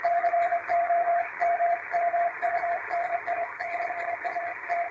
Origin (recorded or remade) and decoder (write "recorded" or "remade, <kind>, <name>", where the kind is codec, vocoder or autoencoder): remade, vocoder, HiFi-GAN